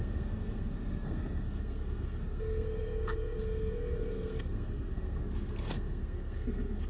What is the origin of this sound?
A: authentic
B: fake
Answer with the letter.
B